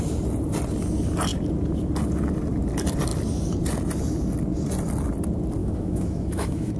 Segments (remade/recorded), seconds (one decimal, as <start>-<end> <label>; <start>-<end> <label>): 0.0-5.6 recorded; 5.6-6.8 remade